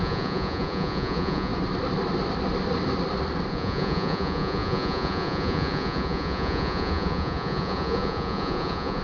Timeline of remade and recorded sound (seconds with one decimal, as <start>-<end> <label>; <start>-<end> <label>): 0.0-1.5 remade; 1.5-3.5 recorded; 3.5-9.0 remade